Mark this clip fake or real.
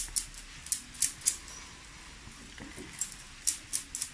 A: real